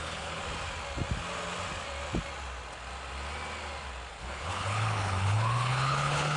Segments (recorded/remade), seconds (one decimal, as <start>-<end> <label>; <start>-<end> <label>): 0.0-0.4 remade; 0.4-4.1 recorded; 4.1-6.4 remade